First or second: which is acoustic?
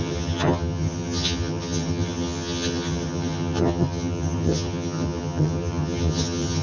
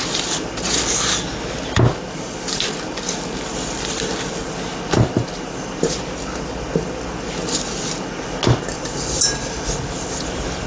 second